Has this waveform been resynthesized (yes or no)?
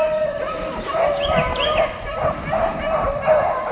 no